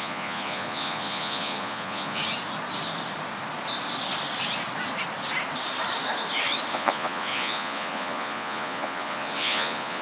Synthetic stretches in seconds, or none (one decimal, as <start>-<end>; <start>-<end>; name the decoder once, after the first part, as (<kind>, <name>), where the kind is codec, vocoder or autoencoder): 0.0-2.2 (vocoder, Vocos); 6.7-10.0